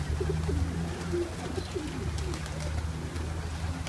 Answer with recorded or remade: recorded